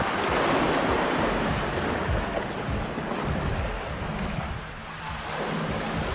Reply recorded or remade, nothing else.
recorded